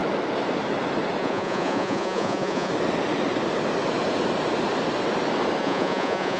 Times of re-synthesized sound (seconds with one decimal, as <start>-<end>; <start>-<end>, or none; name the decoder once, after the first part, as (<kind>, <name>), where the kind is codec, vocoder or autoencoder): 1.2-2.7 (vocoder, Vocos); 5.6-6.4